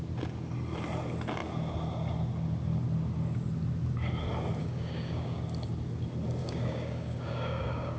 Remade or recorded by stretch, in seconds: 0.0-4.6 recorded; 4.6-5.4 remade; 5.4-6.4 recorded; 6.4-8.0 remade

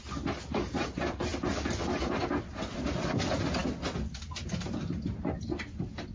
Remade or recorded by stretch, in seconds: 0.0-6.1 recorded

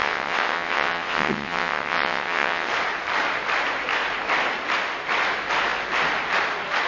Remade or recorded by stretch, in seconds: 0.0-2.7 remade; 2.7-6.9 recorded

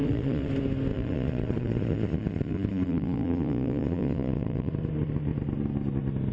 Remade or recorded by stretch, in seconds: 0.0-0.5 remade; 0.5-0.9 recorded; 0.9-4.7 remade; 4.7-6.3 recorded

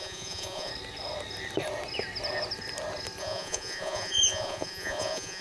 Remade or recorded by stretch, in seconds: 0.0-0.7 remade; 0.7-3.2 recorded; 3.2-5.4 remade

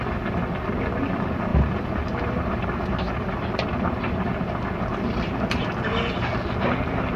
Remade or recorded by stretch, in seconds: 0.0-1.5 recorded; 1.5-4.3 remade; 4.3-7.2 recorded

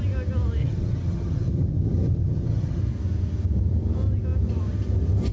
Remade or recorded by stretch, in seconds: 0.0-0.6 recorded; 0.6-2.8 remade; 2.8-5.3 recorded